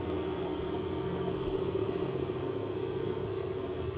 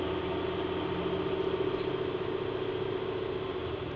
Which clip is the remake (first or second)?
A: first